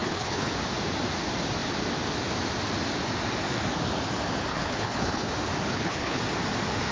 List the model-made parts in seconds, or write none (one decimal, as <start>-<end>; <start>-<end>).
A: 0.0-0.5; 4.5-5.3; 5.7-6.2